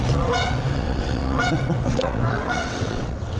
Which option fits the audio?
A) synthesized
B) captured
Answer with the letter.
A